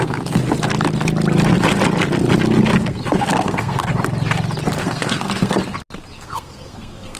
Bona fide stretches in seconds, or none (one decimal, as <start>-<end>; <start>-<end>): 0.4-2.9; 3.9-4.8; 5.6-6.1